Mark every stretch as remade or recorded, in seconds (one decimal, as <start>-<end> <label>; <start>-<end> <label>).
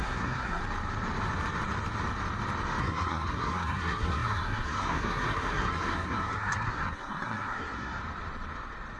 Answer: 0.0-0.6 remade; 0.6-2.8 recorded; 2.8-8.0 remade; 8.0-9.0 recorded